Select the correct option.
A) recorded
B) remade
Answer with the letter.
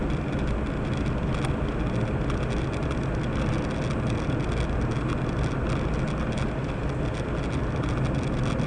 A